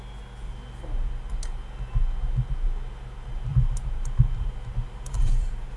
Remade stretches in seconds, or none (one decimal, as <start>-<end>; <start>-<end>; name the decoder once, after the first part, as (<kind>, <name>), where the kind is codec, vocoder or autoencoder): 3.5-5.8 (vocoder, BigVGAN v2)